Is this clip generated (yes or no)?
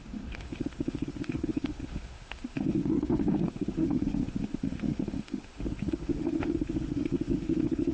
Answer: yes